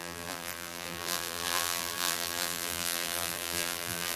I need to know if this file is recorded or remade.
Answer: remade